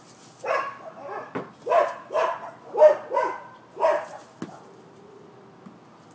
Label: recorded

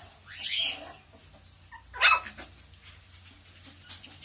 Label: recorded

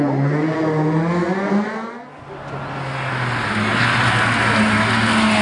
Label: recorded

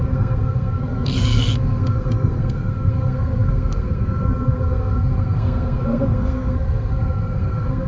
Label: remade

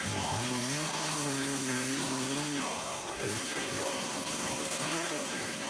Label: remade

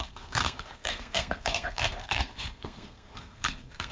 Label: remade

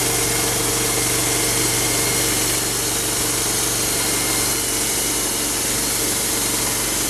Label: recorded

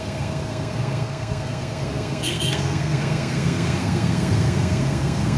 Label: remade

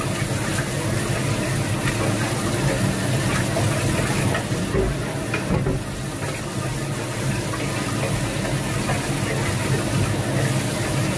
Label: recorded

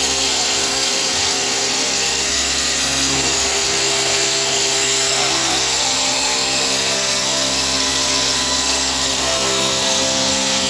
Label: remade